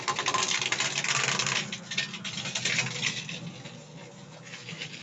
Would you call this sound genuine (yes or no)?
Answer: yes